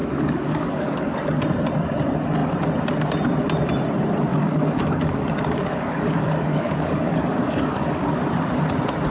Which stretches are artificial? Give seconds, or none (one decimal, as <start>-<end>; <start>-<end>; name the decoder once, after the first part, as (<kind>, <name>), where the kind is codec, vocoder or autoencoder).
0.0-1.4 (codec, DAC); 4.3-8.1